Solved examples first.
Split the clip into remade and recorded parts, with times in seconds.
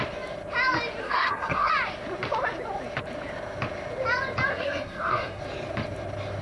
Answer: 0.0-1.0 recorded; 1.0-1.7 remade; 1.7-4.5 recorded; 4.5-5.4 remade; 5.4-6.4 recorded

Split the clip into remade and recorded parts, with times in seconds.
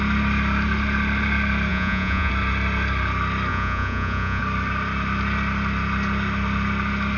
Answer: 0.0-1.7 recorded; 1.7-2.3 remade; 2.3-3.5 recorded; 3.5-4.4 remade; 4.4-7.2 recorded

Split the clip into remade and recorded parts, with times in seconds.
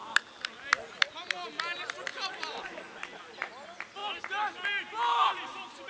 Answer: 0.0-2.1 recorded; 2.1-2.6 remade; 2.6-5.9 recorded